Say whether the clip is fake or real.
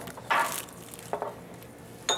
real